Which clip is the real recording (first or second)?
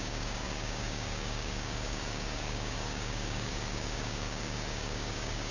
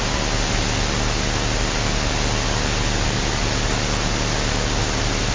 second